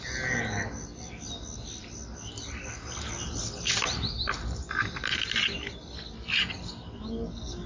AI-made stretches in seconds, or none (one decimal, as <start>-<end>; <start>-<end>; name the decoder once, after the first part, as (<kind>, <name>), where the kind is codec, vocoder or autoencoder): none